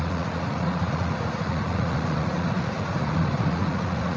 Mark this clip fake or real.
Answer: fake